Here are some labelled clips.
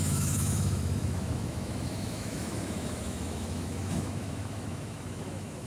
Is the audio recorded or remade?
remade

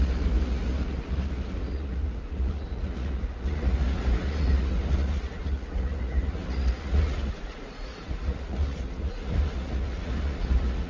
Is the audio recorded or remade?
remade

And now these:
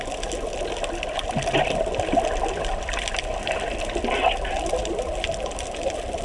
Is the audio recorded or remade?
recorded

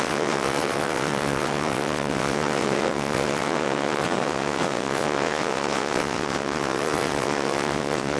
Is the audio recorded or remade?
remade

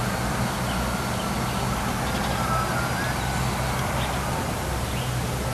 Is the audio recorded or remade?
recorded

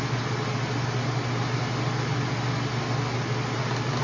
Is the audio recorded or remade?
recorded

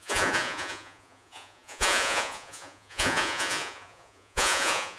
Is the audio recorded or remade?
remade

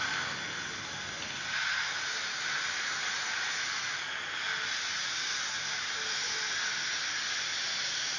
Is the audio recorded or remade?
recorded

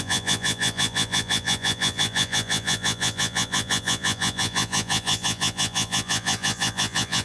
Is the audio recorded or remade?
remade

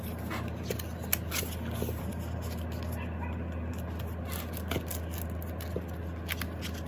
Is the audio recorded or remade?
recorded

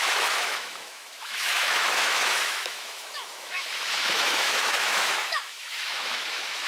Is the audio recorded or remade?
remade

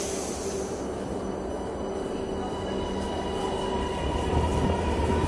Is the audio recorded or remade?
recorded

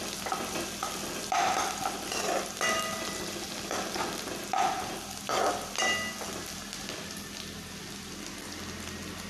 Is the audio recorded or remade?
recorded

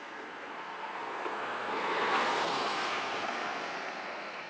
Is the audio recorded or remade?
remade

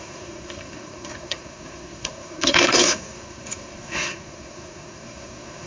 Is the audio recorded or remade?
remade